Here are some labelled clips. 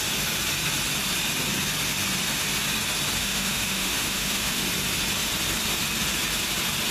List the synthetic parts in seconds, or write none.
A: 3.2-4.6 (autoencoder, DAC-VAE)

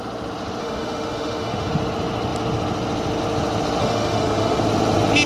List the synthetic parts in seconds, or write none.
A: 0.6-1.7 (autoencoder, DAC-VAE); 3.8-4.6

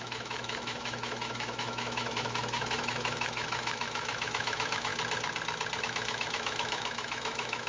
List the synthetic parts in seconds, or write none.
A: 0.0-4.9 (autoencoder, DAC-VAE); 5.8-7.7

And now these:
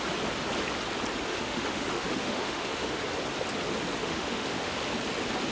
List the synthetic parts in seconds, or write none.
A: 1.3-3.0 (autoencoder, DAC-VAE); 4.0-4.7

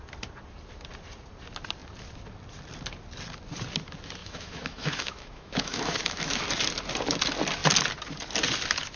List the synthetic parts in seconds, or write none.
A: 4.2-6.4 (autoencoder, DAC-VAE)

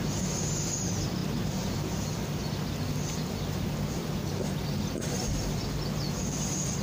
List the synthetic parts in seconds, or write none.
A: none

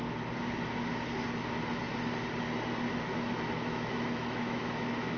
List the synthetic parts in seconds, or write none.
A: 2.9-5.2 (autoencoder, DAC-VAE)

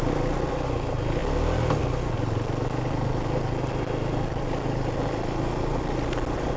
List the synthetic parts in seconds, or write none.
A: none